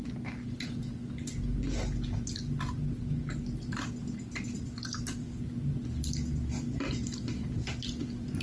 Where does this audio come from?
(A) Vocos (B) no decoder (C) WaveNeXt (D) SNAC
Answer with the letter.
B